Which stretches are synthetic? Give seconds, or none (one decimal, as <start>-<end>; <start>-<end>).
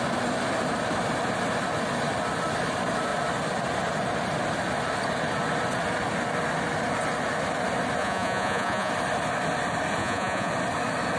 8.0-8.9; 10.0-10.5